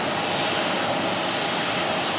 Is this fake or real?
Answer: real